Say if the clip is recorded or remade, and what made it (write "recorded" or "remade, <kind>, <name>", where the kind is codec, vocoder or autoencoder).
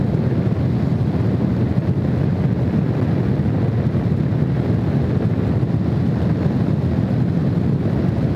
recorded